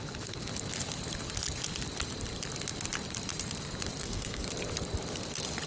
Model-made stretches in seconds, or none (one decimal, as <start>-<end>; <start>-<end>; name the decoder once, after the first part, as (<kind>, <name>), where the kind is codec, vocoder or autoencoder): 4.0-4.5 (codec, SNAC)